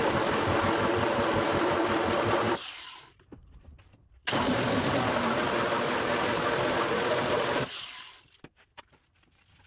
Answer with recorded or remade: remade